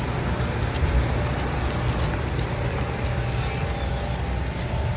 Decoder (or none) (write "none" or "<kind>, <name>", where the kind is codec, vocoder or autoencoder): none